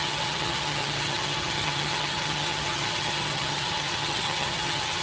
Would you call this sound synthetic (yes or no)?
yes